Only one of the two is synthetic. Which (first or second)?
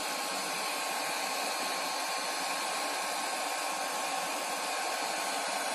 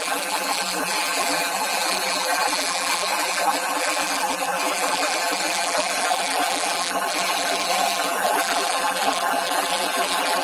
second